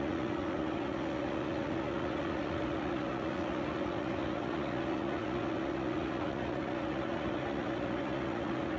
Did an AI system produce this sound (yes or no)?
yes